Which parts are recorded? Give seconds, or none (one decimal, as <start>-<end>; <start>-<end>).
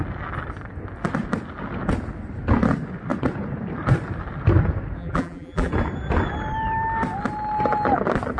0.0-5.0; 5.7-8.4